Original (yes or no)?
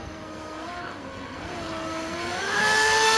no